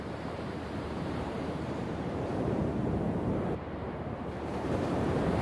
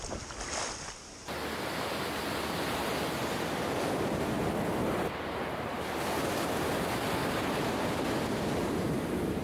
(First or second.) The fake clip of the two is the first